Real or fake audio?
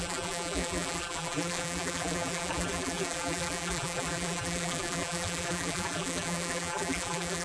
fake